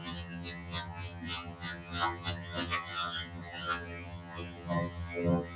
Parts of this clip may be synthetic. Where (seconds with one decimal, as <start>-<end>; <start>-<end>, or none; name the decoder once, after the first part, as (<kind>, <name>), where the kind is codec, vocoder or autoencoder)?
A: 0.0-5.6 (vocoder, HiFi-GAN)